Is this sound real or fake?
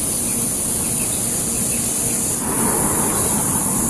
real